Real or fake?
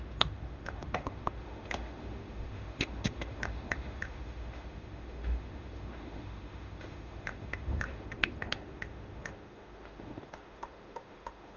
fake